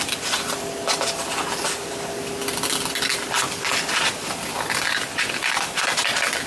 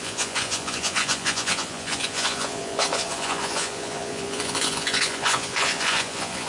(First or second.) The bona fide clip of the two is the first